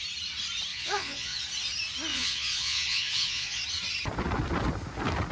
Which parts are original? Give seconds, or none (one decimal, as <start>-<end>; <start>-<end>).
0.0-0.7; 1.4-2.1; 3.6-5.3